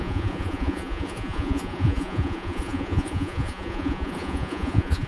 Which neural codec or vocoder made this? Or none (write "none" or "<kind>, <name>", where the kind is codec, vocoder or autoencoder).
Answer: vocoder, Vocos